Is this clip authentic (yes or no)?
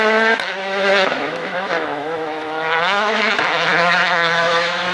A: no